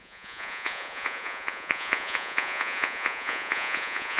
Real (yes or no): no